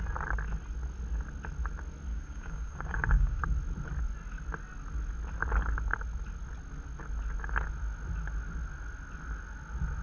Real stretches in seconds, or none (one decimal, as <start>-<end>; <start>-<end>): 0.0-2.1; 3.4-10.0